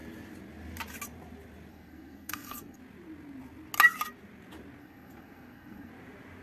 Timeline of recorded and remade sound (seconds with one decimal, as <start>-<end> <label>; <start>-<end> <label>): 0.0-1.7 recorded; 1.7-2.8 remade; 2.8-4.8 recorded; 4.8-5.9 remade; 5.9-6.4 recorded

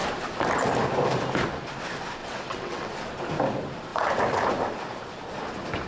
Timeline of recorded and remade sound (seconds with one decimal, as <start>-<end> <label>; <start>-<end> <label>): 0.0-2.2 recorded; 2.2-2.9 remade; 2.9-5.9 recorded